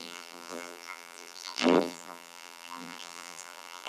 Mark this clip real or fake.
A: fake